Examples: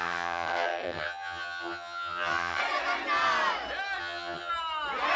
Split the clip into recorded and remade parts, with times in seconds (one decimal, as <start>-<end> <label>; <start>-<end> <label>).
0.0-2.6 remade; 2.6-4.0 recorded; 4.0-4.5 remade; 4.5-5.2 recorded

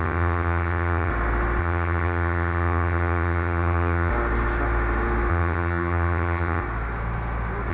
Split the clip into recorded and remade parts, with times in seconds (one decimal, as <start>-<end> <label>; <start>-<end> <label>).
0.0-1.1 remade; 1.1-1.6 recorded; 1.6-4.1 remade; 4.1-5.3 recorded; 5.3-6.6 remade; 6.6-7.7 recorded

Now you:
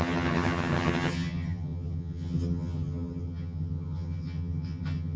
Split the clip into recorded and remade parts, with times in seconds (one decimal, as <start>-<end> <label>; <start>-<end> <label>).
0.0-5.2 remade